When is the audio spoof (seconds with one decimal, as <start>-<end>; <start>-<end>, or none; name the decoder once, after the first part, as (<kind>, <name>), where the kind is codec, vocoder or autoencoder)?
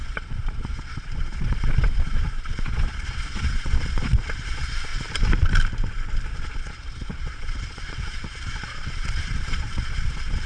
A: 0.0-4.9 (vocoder, Vocos); 6.3-10.5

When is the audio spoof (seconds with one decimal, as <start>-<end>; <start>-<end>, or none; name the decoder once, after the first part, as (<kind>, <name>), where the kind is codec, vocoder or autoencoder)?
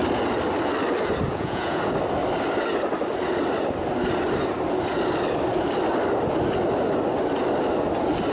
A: 1.3-1.8 (vocoder, Vocos)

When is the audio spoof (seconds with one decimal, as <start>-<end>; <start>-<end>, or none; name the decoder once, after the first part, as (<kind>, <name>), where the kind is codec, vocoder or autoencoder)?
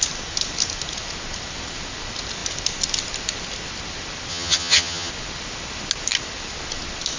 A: 4.3-5.1 (vocoder, HiFi-GAN)